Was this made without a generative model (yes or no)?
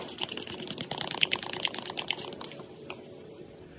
yes